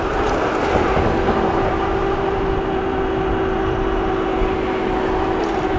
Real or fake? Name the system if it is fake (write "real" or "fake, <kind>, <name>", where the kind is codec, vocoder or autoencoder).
real